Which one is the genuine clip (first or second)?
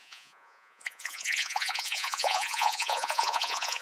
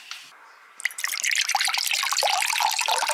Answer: second